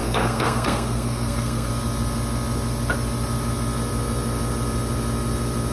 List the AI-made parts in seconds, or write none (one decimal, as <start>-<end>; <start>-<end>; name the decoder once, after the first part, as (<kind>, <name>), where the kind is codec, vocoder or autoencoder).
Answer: 0.0-1.7 (codec, SNAC)